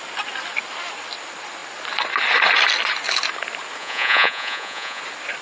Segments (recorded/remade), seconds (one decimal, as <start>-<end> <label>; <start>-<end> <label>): 0.0-3.8 recorded; 3.8-5.0 remade; 5.0-5.4 recorded